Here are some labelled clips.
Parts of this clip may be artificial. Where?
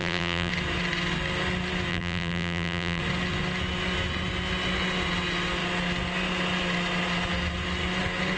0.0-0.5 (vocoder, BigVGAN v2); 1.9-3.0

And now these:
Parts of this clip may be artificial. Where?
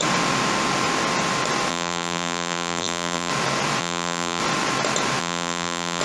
1.7-3.3 (vocoder, BigVGAN v2); 3.8-4.4; 5.2-6.0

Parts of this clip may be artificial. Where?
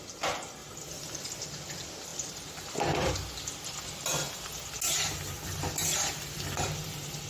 0.6-1.3 (vocoder, BigVGAN v2); 2.1-3.1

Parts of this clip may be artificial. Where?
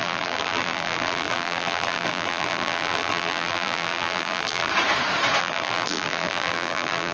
0.0-4.7 (vocoder, BigVGAN v2); 5.4-7.1